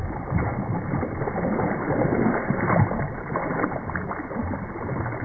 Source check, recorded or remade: recorded